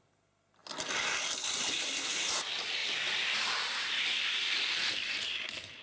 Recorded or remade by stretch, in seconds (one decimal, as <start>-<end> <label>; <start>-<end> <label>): 0.0-2.8 recorded; 2.8-4.9 remade; 4.9-5.8 recorded